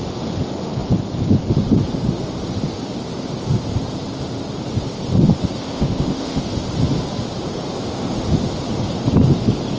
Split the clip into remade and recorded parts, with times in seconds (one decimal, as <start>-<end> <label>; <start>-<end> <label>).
0.0-5.6 recorded; 5.6-6.4 remade; 6.4-9.8 recorded